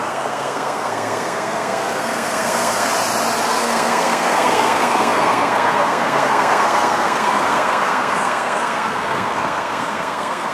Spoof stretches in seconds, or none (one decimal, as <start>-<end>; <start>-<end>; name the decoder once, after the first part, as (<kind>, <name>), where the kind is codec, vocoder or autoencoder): 0.0-2.9 (codec, SNAC); 3.5-10.5